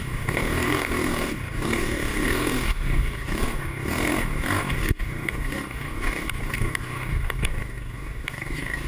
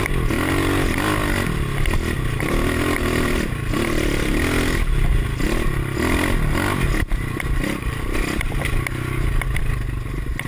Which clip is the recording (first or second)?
second